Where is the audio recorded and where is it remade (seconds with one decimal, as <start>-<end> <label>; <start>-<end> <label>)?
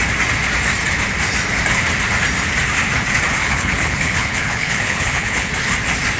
0.0-3.4 recorded; 3.4-5.5 remade; 5.5-6.2 recorded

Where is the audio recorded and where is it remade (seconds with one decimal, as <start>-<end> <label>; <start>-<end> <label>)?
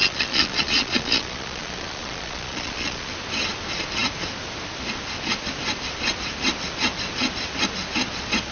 0.0-3.1 remade; 3.1-8.5 recorded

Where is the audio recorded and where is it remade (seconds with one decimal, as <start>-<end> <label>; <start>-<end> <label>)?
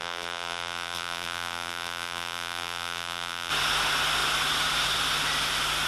0.0-3.5 remade; 3.5-5.9 recorded